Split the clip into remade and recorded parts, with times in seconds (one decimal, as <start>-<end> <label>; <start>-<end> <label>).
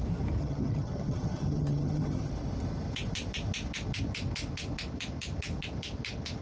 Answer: 0.0-0.4 recorded; 0.4-2.3 remade; 2.3-6.4 recorded